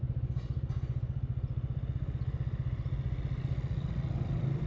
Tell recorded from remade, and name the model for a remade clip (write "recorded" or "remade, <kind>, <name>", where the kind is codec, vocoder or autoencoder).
recorded